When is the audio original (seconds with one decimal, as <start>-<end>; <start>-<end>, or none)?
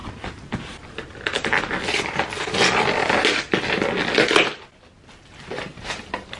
0.0-5.7